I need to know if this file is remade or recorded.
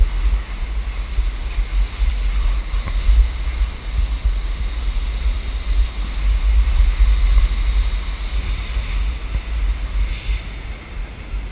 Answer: recorded